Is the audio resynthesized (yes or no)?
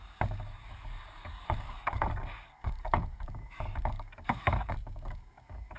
yes